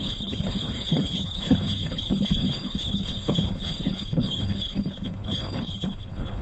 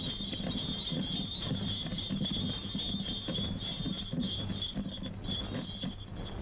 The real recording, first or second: second